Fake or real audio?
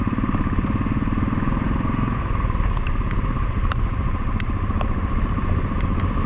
fake